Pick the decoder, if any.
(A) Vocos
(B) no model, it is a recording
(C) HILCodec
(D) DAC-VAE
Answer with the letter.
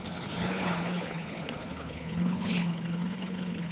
C